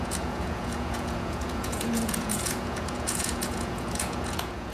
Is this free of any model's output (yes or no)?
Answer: no